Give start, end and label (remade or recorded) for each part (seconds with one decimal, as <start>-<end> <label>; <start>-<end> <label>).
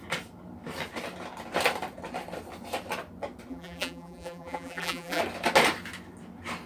0.0-3.5 recorded; 3.5-5.2 remade; 5.2-6.7 recorded